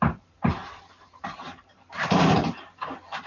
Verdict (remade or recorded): remade